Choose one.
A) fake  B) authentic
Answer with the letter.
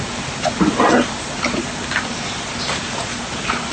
B